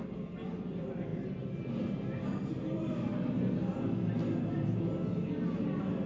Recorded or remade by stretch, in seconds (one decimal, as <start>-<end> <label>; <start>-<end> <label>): 0.0-3.1 remade; 3.1-6.1 recorded

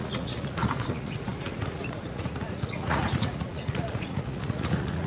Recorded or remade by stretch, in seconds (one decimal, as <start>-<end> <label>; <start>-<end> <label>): 0.0-5.1 remade

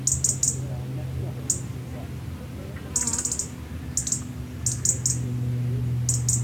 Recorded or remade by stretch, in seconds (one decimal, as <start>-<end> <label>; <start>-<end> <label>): 0.0-6.4 recorded

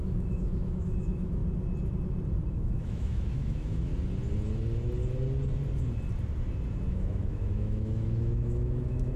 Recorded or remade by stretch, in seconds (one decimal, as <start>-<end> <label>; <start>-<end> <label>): 0.0-1.4 remade; 1.4-2.5 recorded; 2.5-3.9 remade; 3.9-6.9 recorded; 6.9-9.2 remade

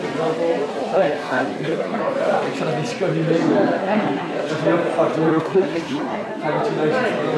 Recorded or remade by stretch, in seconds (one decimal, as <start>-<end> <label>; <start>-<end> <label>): 0.0-0.7 recorded; 0.7-2.0 remade; 2.0-3.8 recorded; 3.8-4.5 remade; 4.5-5.3 recorded; 5.3-6.3 remade; 6.3-7.4 recorded

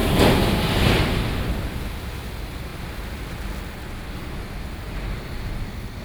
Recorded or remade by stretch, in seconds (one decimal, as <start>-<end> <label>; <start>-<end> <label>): 0.0-1.2 remade; 1.2-6.0 recorded